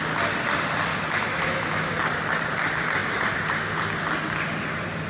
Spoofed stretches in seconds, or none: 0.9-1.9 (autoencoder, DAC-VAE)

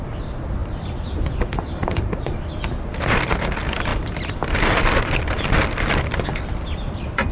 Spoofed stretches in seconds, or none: 0.0-7.3 (vocoder, BigVGAN v2)

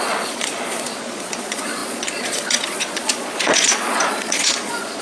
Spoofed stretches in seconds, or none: 0.0-5.0 (vocoder, Vocos)

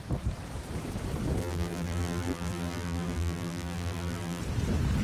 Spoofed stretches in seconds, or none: 1.4-4.4 (vocoder, BigVGAN v2)

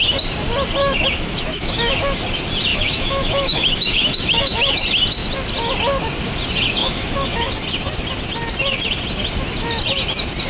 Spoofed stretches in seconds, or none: 0.8-2.0 (autoencoder, DAC-VAE); 2.7-4.7; 6.8-7.5

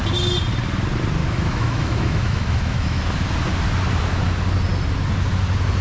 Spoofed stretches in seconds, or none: 1.2-3.0 (autoencoder, DAC-VAE)